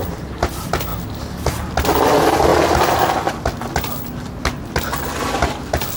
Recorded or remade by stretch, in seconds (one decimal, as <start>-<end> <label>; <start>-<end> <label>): 0.0-6.0 recorded